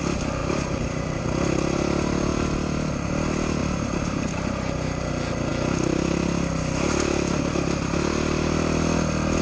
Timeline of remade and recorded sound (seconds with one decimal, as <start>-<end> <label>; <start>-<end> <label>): 0.0-0.4 recorded; 0.4-1.2 remade; 1.2-3.6 recorded; 3.6-5.0 remade; 5.0-9.4 recorded